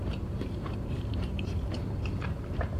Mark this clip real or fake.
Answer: fake